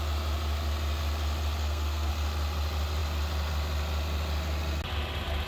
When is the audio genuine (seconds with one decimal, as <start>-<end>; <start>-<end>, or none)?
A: 0.0-1.6; 2.1-5.5